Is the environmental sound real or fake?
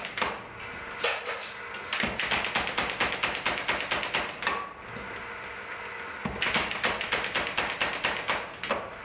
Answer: real